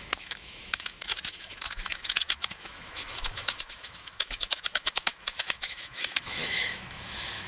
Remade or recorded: remade